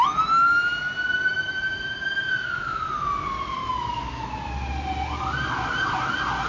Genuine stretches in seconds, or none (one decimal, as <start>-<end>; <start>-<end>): 0.0-1.3; 2.8-3.6; 4.3-6.5

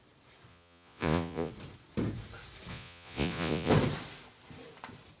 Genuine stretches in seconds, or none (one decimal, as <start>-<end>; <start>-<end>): 0.0-0.5; 1.5-2.7; 3.7-5.2